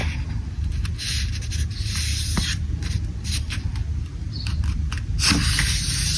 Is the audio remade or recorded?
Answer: recorded